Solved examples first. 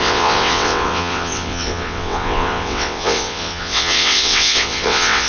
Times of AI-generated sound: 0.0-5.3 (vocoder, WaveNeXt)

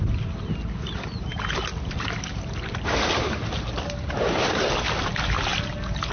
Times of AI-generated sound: none

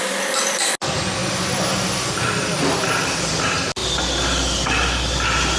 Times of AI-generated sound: none

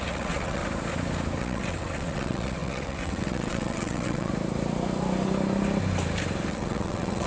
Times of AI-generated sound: 0.0-0.6 (vocoder, WaveNeXt); 1.4-4.3; 6.5-7.3

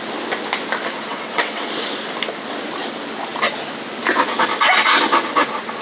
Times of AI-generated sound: 1.1-1.7 (vocoder, WaveNeXt)

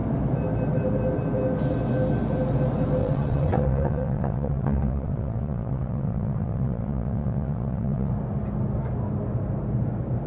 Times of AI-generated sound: 3.0-8.1 (vocoder, WaveNeXt)